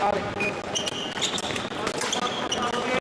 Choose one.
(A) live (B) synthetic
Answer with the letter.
A